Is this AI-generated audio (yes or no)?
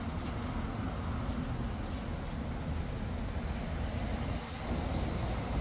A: no